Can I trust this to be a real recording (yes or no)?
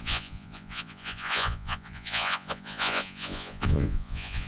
no